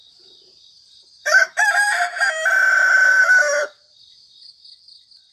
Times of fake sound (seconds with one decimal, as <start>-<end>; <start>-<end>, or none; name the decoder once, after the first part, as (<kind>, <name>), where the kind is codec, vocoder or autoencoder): 0.0-3.2 (vocoder, BigVGAN v2)